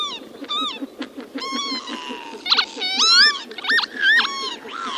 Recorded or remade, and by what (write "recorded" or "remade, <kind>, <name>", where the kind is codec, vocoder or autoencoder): recorded